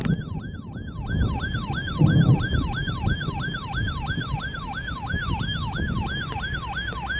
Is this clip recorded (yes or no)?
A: yes